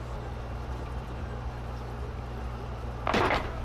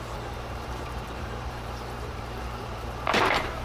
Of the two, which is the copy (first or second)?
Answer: second